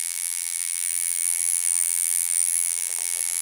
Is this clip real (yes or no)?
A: no